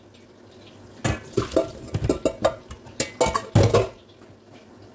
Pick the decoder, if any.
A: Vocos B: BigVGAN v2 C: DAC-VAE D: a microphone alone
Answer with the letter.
D